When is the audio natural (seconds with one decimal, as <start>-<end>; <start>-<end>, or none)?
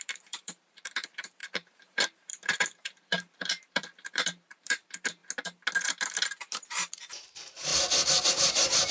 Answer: 5.2-6.6; 7.7-8.3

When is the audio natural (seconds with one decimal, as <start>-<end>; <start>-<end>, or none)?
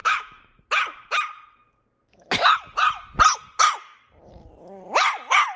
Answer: 0.6-5.6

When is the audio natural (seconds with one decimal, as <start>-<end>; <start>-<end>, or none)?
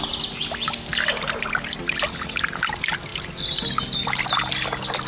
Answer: 0.0-0.9; 2.3-5.1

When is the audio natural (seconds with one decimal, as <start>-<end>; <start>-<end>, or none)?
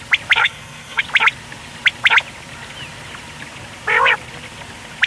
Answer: 0.0-0.4; 1.0-5.1